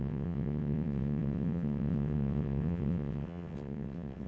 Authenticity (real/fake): fake